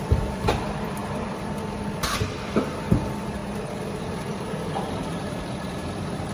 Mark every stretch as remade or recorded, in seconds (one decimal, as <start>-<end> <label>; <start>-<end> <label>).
0.0-3.4 remade; 3.4-4.0 recorded; 4.0-6.3 remade